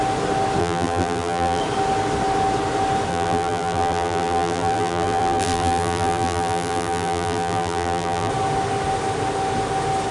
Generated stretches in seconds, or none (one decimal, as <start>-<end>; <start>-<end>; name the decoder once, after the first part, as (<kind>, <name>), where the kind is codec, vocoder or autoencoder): 0.6-1.6 (vocoder, BigVGAN v2); 3.1-8.3